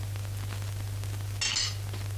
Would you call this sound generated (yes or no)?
no